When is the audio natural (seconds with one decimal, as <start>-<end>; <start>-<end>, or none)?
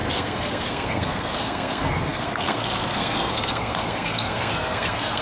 none